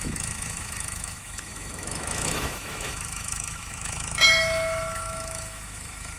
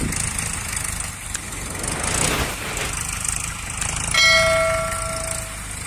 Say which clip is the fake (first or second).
first